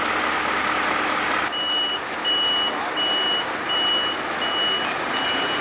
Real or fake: real